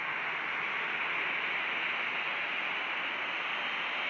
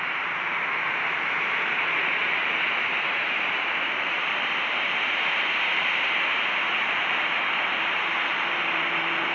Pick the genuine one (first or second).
first